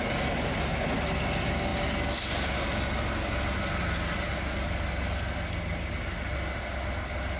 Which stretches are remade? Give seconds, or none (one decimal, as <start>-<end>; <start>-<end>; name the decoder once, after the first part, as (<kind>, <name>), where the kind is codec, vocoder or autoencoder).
none